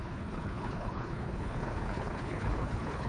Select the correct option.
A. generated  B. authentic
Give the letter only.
A